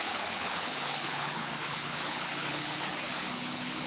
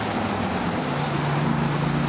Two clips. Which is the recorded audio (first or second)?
second